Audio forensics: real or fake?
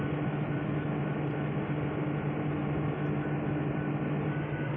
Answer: real